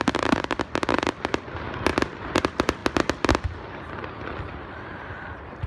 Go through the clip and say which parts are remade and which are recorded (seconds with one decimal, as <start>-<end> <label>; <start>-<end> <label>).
0.0-1.9 remade; 1.9-2.4 recorded; 2.4-2.8 remade; 2.8-4.9 recorded; 4.9-5.7 remade